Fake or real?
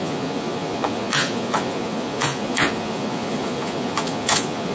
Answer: fake